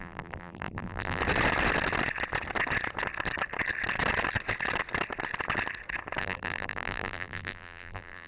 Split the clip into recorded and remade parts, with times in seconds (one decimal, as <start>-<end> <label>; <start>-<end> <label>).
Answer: 0.0-1.2 remade; 1.2-6.2 recorded; 6.2-8.3 remade

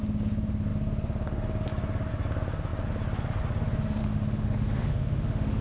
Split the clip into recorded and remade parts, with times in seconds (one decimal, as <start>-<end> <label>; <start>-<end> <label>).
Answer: 0.0-4.0 recorded; 4.0-5.6 remade

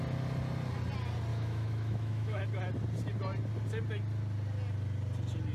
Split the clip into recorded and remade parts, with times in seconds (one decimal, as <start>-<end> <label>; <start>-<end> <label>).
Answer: 0.0-1.3 recorded; 1.3-2.4 remade; 2.4-5.5 recorded

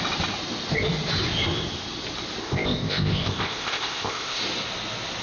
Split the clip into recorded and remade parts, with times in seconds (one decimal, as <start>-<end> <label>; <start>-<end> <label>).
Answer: 0.0-2.4 recorded; 2.4-4.4 remade; 4.4-5.2 recorded

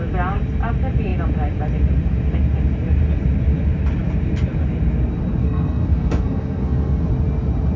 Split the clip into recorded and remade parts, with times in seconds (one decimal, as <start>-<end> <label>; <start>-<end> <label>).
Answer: 0.0-5.4 recorded; 5.4-7.1 remade; 7.1-7.8 recorded